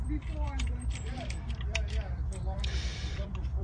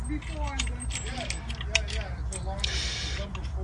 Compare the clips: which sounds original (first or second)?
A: second